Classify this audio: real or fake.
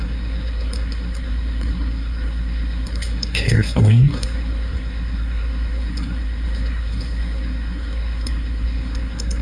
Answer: fake